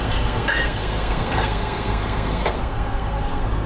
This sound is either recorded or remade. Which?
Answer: remade